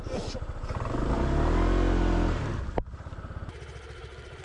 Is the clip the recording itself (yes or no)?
yes